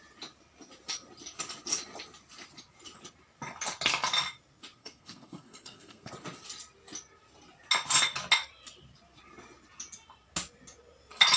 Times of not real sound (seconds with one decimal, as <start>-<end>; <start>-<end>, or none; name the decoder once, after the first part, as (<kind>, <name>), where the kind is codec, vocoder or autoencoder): 4.8-6.1 (codec, SNAC)